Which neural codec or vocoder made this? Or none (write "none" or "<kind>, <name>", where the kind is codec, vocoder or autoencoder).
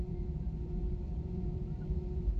vocoder, BigVGAN v2